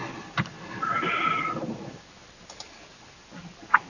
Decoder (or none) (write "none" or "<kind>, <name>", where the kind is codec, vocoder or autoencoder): none